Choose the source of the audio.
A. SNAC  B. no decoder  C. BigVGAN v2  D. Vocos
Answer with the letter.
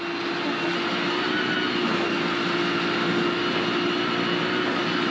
B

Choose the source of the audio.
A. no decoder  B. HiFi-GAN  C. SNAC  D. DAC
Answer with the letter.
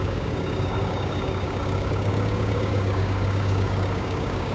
D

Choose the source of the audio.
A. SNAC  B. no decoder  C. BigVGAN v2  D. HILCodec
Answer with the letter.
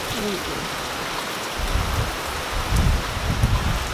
B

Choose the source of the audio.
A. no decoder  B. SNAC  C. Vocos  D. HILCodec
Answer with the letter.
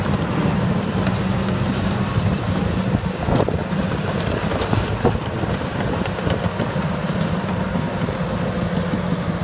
A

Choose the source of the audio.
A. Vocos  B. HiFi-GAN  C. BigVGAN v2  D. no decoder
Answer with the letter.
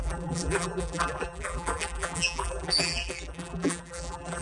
C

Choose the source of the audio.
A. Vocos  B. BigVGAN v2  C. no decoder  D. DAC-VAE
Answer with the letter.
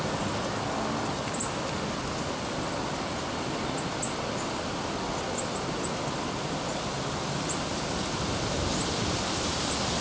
C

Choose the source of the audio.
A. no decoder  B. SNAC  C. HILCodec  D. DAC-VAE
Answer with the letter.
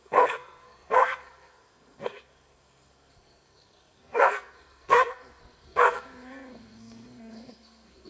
B